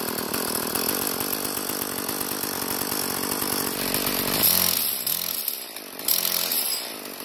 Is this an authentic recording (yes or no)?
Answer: yes